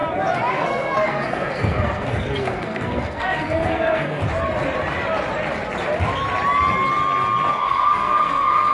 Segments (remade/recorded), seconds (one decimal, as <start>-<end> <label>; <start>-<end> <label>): 0.0-0.5 recorded; 0.5-4.2 remade; 4.2-7.5 recorded; 7.5-8.7 remade